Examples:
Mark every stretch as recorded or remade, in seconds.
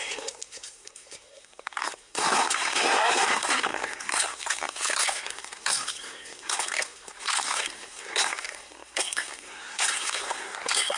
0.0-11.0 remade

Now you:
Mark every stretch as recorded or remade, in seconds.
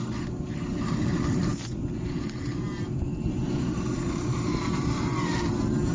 0.0-5.9 remade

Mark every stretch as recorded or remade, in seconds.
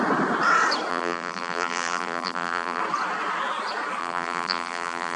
0.0-0.9 recorded; 0.9-2.8 remade; 2.8-4.0 recorded; 4.0-5.2 remade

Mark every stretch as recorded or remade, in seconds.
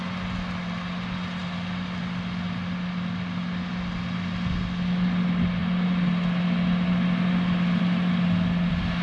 0.0-9.0 recorded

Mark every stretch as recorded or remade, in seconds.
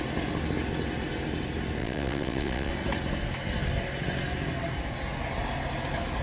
0.0-1.8 recorded; 1.8-2.7 remade; 2.7-6.2 recorded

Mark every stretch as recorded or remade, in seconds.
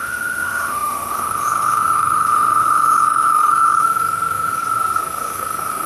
0.0-4.6 remade; 4.6-5.1 recorded; 5.1-5.9 remade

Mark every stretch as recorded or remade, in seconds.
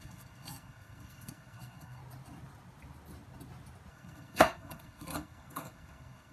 0.0-2.0 remade; 2.0-3.9 recorded; 3.9-6.3 remade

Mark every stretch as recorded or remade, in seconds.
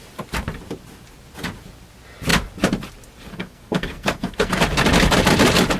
0.0-3.3 recorded; 3.3-4.6 remade; 4.6-5.8 recorded